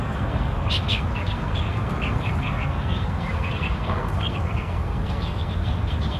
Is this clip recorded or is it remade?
remade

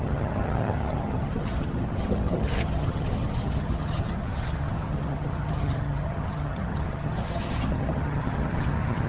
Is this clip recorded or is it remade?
remade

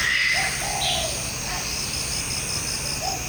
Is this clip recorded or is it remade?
recorded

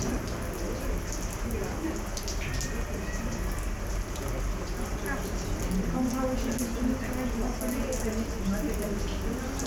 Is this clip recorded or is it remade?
recorded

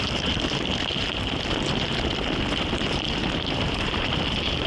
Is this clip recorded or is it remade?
remade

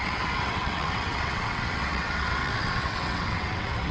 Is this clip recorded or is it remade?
remade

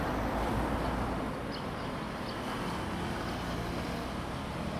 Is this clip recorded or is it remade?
recorded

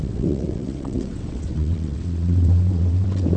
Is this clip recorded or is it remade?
remade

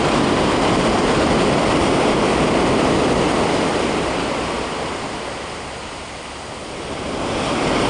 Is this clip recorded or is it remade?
remade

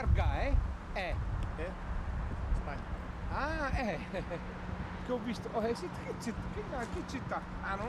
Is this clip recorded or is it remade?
recorded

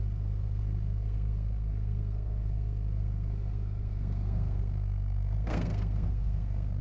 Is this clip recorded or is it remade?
remade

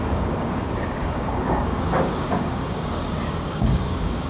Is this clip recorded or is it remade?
remade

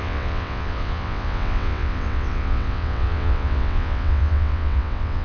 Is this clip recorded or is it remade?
remade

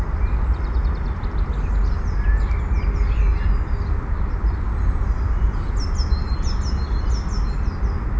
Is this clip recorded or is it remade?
recorded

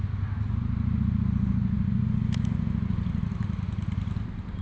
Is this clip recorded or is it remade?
recorded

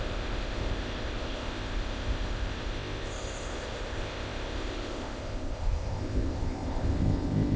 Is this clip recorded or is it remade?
remade